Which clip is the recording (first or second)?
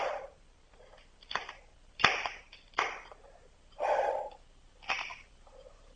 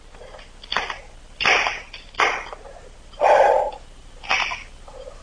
second